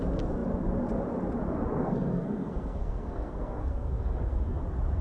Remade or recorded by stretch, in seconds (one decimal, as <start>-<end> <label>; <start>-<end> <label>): 0.0-1.8 recorded; 1.8-4.6 remade; 4.6-5.0 recorded